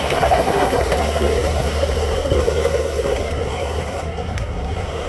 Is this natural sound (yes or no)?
no